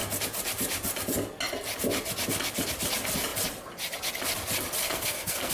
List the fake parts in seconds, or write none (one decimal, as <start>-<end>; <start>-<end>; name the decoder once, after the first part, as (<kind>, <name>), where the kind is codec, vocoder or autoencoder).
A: 4.8-5.5 (codec, SNAC)